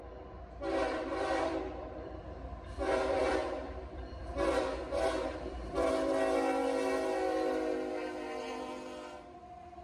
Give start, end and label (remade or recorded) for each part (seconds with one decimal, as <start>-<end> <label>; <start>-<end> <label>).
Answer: 0.0-0.9 recorded; 0.9-2.2 remade; 2.2-2.9 recorded; 2.9-5.9 remade; 5.9-9.8 recorded